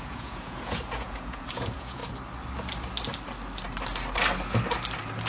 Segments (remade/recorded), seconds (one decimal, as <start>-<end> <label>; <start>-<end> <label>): 0.0-2.0 remade; 2.0-5.3 recorded